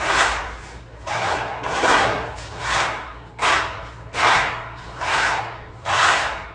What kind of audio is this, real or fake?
fake